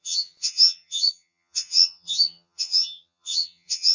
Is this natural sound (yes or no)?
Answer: no